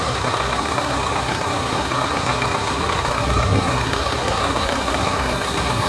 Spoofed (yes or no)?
yes